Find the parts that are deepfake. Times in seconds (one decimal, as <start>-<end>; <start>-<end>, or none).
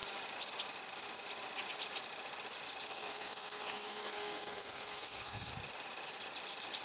2.9-5.5